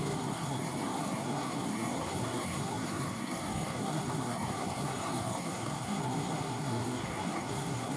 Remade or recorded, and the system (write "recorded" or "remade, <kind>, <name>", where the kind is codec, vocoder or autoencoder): remade, codec, SNAC